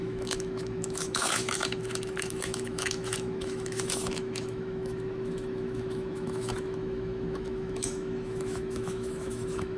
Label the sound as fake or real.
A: fake